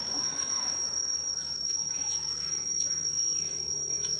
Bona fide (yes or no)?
no